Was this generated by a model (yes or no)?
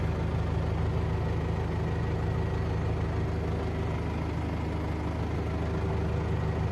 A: no